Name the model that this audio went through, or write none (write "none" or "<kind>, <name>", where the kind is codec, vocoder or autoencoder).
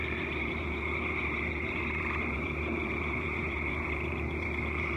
vocoder, BigVGAN v2